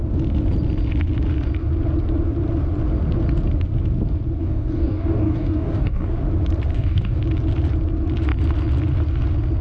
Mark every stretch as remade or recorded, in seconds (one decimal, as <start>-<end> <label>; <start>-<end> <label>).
0.0-4.4 recorded; 4.4-6.2 remade; 6.2-6.7 recorded; 6.7-7.2 remade; 7.2-9.6 recorded